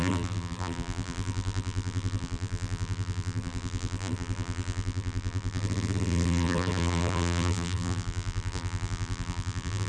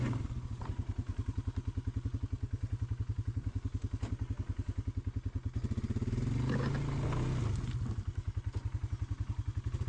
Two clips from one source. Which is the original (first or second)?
second